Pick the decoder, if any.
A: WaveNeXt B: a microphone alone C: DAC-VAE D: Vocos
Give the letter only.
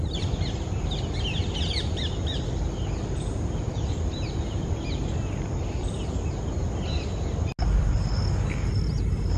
B